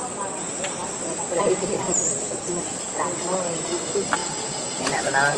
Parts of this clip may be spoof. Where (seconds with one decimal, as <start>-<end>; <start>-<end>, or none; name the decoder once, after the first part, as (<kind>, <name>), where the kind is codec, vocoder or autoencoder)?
4.2-4.8 (vocoder, Vocos)